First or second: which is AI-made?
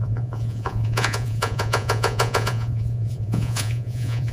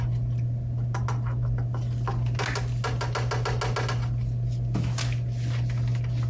first